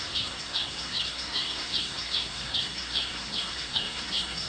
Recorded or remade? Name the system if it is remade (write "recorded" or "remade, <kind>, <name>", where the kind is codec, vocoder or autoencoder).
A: remade, codec, SNAC